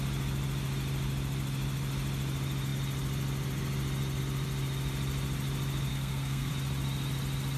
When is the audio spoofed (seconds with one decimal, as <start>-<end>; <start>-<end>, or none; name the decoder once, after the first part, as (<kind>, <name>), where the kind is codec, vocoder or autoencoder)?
5.9-6.5 (codec, SNAC)